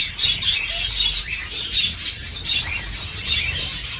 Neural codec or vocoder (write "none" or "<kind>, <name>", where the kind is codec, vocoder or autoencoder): vocoder, BigVGAN v2